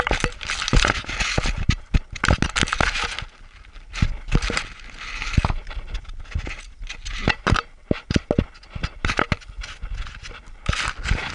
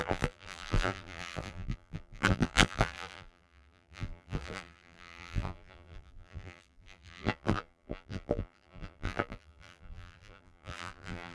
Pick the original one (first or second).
first